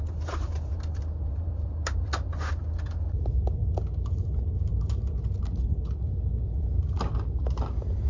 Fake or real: real